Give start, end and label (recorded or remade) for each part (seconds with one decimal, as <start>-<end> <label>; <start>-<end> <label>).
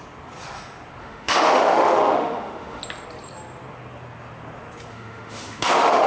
0.0-1.0 recorded; 1.0-2.8 remade; 2.8-4.9 recorded; 4.9-6.1 remade